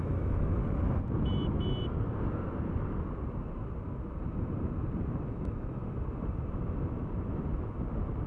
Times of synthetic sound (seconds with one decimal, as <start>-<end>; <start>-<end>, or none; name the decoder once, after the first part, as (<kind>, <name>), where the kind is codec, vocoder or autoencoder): 0.0-0.6 (autoencoder, DAC-VAE); 5.3-5.8